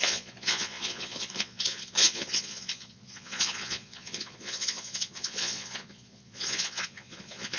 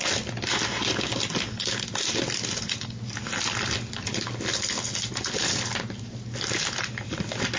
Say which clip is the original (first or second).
second